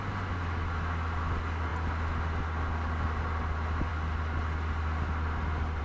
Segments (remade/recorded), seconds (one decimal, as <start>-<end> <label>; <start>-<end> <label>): 0.0-5.8 recorded